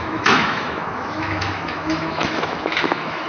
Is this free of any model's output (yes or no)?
no